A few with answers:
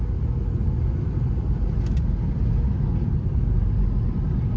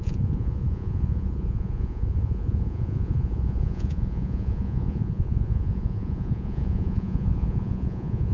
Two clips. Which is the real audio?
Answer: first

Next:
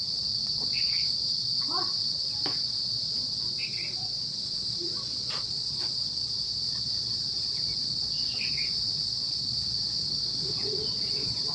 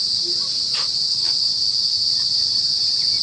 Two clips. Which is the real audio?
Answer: second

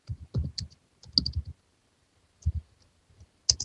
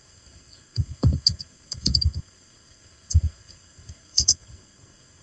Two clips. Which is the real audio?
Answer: first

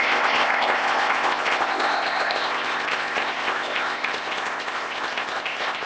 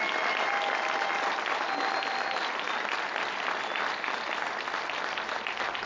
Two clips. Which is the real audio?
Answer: second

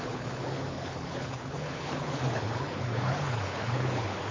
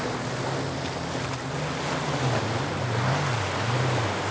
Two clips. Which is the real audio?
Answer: second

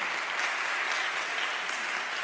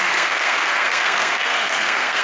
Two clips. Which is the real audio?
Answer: first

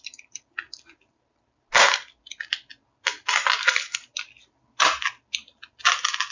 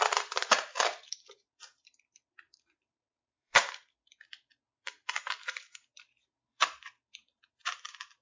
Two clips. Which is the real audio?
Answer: first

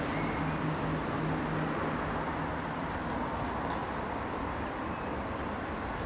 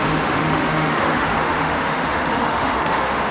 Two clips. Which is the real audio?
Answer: first